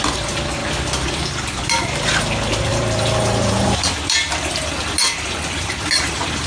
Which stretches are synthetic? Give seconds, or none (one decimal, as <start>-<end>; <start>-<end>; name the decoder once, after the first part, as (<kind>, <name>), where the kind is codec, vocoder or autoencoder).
2.7-3.9 (vocoder, BigVGAN v2)